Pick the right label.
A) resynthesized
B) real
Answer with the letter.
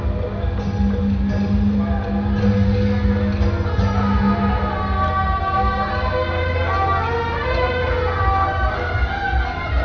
B